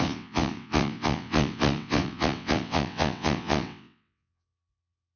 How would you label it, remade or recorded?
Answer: remade